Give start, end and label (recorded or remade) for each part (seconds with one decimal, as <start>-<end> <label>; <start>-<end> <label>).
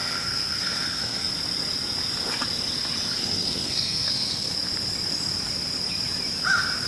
0.0-1.3 remade; 1.3-3.2 recorded; 3.2-4.5 remade; 4.5-6.9 recorded